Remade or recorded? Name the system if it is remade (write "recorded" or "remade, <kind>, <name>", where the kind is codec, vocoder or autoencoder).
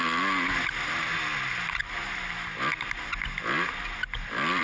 recorded